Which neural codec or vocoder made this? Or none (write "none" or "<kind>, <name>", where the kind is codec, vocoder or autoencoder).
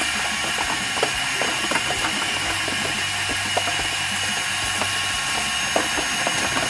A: none